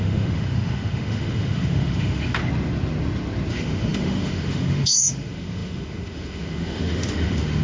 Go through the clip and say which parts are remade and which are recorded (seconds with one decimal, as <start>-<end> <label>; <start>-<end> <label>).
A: 0.0-2.4 remade; 2.4-3.5 recorded; 3.5-7.6 remade